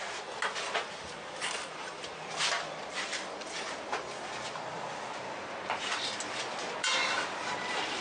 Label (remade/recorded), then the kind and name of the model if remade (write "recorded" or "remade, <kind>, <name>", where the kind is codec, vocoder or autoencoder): recorded